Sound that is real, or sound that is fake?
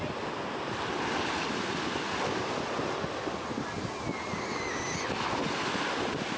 real